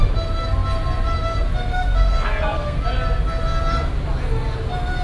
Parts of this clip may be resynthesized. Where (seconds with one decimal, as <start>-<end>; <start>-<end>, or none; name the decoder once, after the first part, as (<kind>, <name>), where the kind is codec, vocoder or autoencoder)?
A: 1.7-2.8 (codec, SNAC)